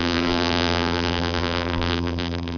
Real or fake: fake